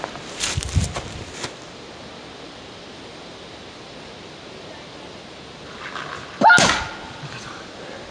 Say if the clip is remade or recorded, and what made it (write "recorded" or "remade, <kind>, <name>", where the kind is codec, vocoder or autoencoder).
recorded